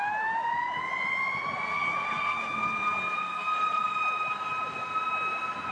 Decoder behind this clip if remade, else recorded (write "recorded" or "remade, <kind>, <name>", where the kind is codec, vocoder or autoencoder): recorded